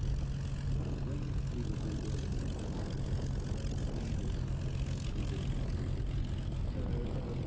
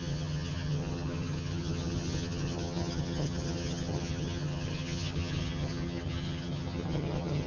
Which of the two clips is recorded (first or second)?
first